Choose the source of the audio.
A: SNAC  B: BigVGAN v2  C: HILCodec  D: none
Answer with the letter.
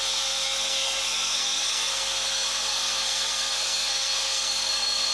A